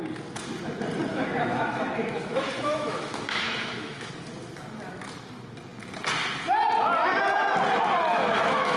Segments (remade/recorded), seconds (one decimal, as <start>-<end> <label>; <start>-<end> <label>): 0.0-1.1 recorded; 1.1-4.1 remade; 4.1-8.1 recorded; 8.1-8.8 remade